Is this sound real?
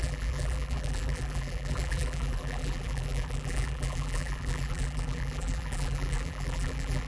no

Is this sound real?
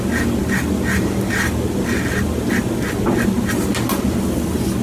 yes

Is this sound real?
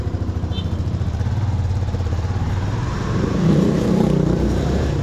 no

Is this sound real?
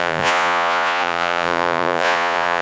no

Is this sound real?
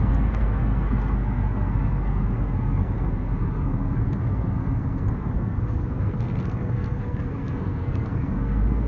no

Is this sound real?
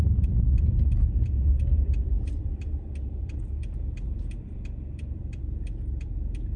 no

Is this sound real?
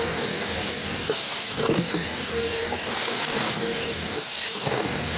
no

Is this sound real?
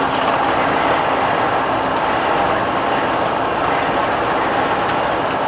yes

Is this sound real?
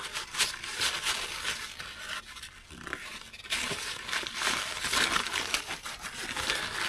yes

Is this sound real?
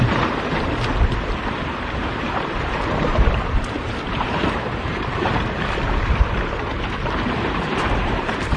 no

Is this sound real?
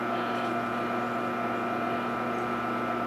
yes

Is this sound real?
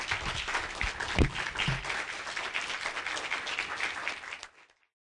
yes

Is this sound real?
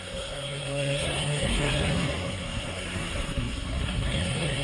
no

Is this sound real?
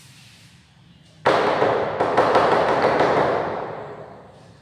no